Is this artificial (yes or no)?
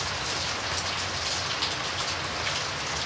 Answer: no